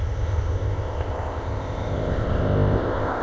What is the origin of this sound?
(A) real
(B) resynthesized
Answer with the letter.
B